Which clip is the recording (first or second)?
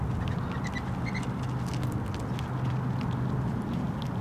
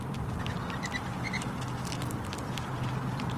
first